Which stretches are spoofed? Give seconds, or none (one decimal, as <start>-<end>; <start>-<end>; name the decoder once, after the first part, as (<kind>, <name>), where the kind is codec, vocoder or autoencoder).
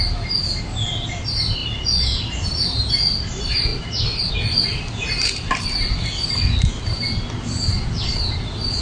none